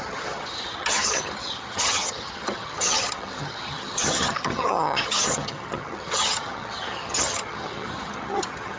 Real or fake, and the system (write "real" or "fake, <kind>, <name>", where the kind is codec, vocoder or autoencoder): fake, vocoder, HiFi-GAN